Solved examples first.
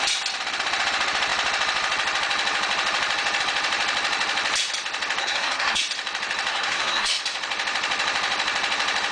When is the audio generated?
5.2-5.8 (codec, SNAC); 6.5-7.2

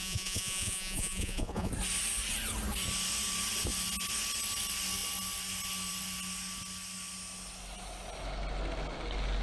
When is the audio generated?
0.0-1.7 (vocoder, Vocos)